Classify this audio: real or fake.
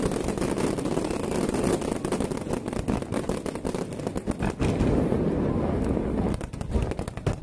real